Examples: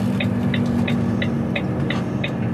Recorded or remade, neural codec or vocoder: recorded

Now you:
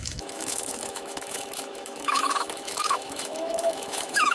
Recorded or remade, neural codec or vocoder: remade, autoencoder, DAC-VAE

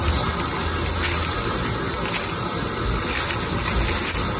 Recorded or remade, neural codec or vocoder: recorded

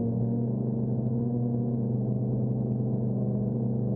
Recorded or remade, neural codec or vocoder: remade, autoencoder, DAC-VAE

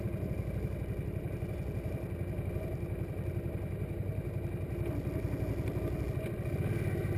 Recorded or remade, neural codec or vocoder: recorded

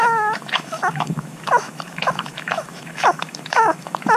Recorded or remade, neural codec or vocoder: remade, autoencoder, DAC-VAE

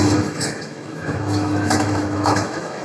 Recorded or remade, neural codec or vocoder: remade, autoencoder, DAC-VAE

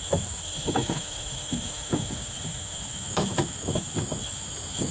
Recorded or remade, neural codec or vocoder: remade, autoencoder, DAC-VAE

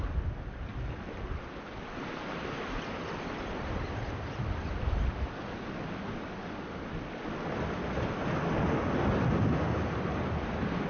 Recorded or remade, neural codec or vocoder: recorded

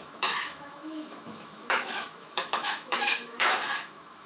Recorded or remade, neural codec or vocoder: remade, autoencoder, DAC-VAE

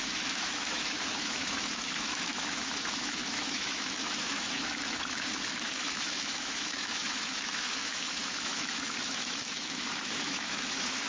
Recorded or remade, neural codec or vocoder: remade, autoencoder, DAC-VAE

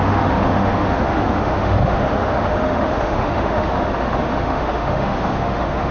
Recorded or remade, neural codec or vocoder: remade, autoencoder, DAC-VAE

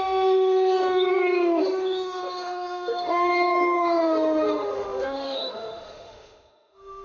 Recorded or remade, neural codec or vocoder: remade, autoencoder, DAC-VAE